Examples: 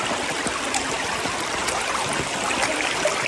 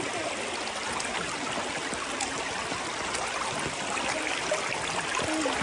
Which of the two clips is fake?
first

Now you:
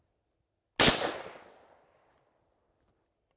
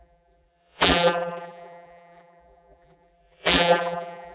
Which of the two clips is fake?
second